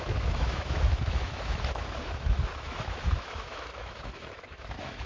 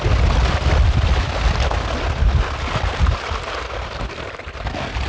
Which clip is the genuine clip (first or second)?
second